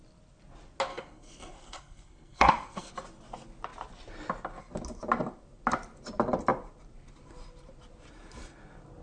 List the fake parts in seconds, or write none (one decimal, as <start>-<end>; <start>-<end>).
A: 0.9-2.9